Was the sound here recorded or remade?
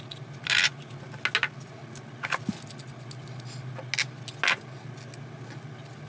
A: recorded